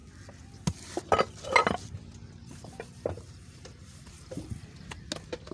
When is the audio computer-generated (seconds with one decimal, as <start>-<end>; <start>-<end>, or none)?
none